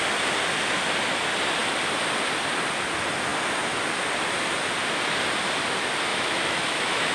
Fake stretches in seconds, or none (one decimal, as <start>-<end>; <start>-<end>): 6.1-7.1